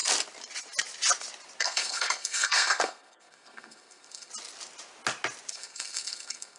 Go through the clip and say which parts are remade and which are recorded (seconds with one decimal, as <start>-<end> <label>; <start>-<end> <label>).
0.0-1.6 recorded; 1.6-4.3 remade; 4.3-5.5 recorded; 5.5-6.6 remade